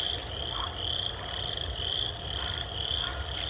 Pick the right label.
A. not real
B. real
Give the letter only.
B